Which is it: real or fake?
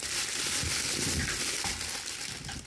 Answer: real